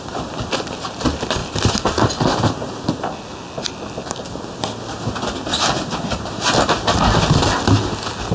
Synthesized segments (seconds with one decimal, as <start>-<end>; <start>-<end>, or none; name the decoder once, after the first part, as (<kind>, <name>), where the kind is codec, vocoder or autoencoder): none